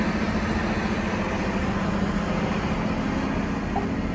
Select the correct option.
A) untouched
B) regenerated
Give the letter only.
A